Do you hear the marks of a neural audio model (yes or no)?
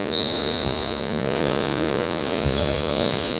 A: yes